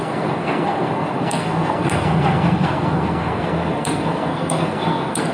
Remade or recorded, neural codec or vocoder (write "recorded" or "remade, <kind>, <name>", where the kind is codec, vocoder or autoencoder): remade, codec, SNAC